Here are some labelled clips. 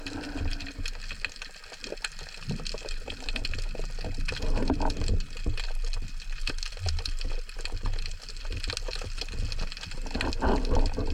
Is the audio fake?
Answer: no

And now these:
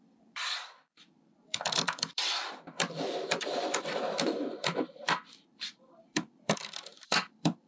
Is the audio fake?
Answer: yes